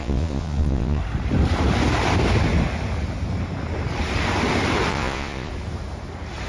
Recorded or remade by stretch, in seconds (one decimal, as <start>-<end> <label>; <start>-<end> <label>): 0.0-1.0 remade; 1.0-4.9 recorded; 4.9-5.5 remade; 5.5-6.5 recorded